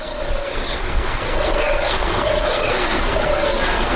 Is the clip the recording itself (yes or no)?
no